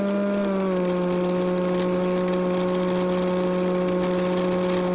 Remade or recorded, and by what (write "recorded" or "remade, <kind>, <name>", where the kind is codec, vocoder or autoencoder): recorded